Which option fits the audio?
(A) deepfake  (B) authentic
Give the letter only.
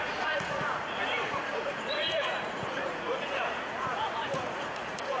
A